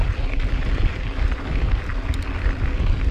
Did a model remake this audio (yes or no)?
no